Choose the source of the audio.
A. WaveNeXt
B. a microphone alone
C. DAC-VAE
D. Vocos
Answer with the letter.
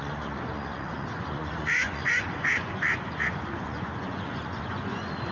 D